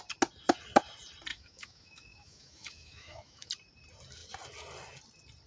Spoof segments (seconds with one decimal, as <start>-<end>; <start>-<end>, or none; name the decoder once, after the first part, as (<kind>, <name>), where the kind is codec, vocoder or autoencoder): 1.3-3.5 (autoencoder, DAC-VAE)